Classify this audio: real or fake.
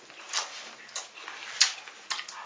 real